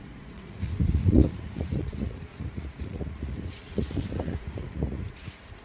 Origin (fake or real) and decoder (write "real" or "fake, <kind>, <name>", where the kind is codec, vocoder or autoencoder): fake, vocoder, Vocos